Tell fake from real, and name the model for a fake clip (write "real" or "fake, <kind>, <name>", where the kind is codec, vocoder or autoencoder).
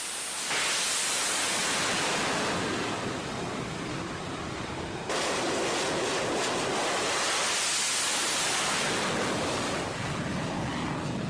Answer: real